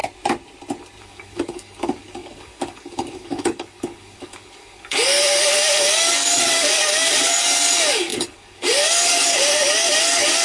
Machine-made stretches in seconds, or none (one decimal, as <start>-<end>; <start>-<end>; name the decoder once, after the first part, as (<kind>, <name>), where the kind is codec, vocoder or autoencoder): 1.0-10.4 (codec, DAC)